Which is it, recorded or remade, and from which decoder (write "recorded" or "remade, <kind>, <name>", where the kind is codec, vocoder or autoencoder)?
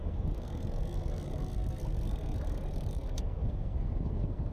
remade, codec, SNAC